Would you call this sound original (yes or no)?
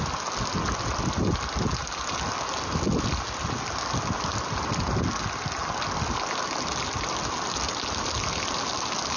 yes